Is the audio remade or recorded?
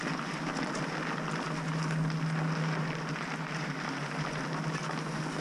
recorded